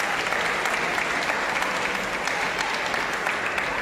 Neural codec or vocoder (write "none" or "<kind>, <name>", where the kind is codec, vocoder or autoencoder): none